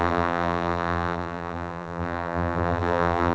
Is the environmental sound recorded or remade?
remade